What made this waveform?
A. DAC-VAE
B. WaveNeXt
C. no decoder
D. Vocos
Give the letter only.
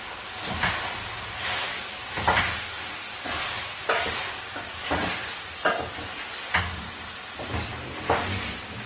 C